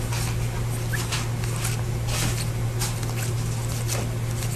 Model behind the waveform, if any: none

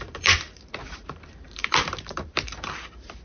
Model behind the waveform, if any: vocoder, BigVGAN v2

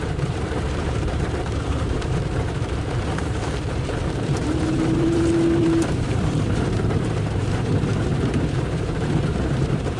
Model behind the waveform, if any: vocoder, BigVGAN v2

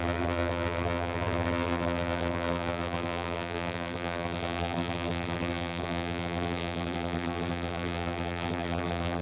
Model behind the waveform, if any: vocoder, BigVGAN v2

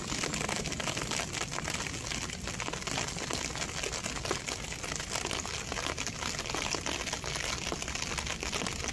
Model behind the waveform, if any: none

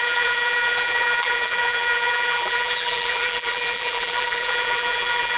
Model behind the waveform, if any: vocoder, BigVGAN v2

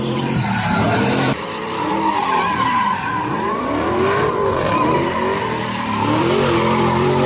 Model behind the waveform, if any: vocoder, BigVGAN v2